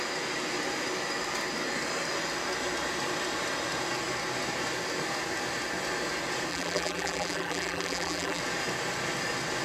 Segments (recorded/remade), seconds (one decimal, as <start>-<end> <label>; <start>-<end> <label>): 0.0-6.5 recorded; 6.5-8.4 remade; 8.4-9.6 recorded